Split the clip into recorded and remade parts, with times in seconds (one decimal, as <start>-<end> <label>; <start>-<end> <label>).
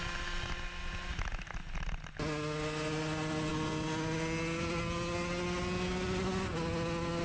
0.0-7.2 recorded